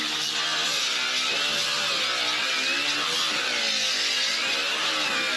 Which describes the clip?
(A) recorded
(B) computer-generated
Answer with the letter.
A